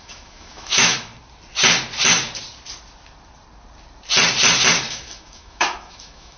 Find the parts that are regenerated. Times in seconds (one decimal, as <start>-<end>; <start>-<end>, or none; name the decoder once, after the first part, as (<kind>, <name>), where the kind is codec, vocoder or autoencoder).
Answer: 0.0-1.1 (autoencoder, DAC-VAE); 4.9-6.4